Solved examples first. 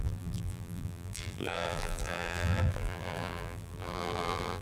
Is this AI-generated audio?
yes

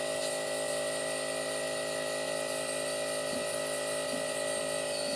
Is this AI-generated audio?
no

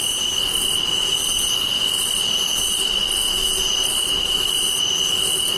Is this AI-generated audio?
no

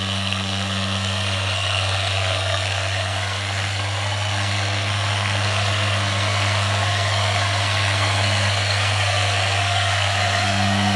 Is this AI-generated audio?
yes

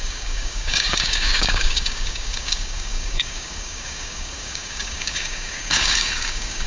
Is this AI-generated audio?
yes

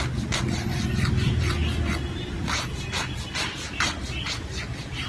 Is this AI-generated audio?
no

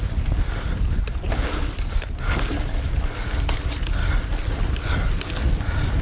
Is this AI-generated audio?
no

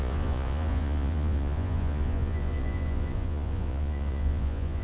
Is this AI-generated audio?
yes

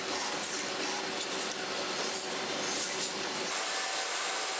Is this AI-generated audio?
no